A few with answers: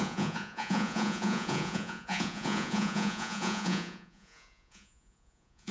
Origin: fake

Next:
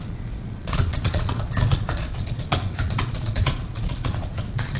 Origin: fake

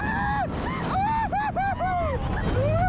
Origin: real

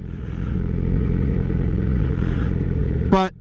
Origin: fake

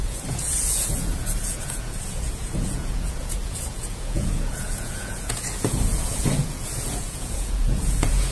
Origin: fake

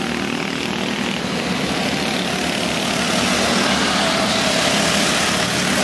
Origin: real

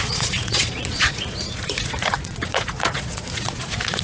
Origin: fake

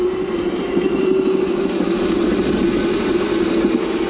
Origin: real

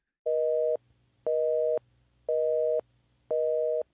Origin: real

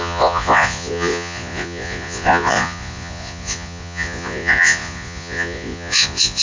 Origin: fake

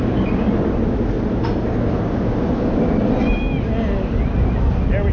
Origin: real